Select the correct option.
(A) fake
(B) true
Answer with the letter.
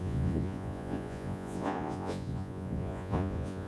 A